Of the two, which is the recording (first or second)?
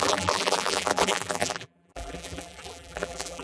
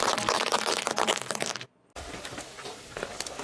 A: second